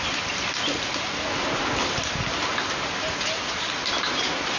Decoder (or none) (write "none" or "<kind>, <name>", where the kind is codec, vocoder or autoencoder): none